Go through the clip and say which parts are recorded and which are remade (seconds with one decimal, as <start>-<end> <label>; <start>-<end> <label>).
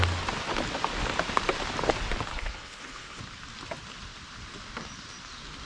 0.0-2.3 recorded; 2.3-3.2 remade; 3.2-5.7 recorded